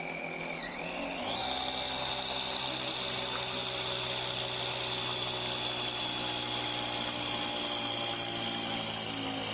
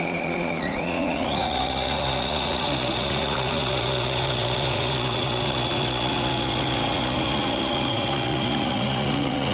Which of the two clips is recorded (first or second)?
first